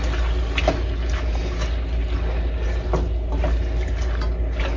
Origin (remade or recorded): recorded